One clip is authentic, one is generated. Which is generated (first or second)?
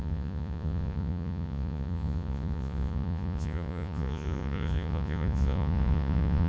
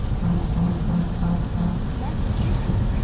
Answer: first